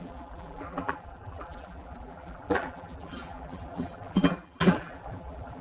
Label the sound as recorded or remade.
remade